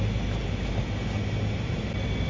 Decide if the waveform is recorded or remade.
recorded